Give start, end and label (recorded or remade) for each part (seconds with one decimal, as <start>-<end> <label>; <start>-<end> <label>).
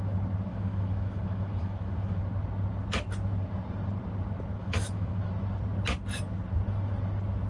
0.0-0.5 recorded; 0.5-2.2 remade; 2.2-4.6 recorded; 4.6-5.3 remade; 5.3-7.5 recorded